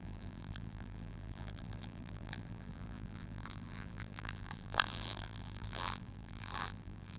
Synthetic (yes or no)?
yes